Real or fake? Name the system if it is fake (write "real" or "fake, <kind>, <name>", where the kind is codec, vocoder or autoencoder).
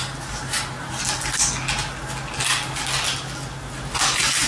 real